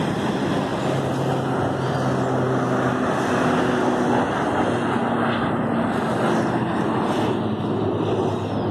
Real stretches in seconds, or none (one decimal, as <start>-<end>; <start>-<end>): 0.0-8.7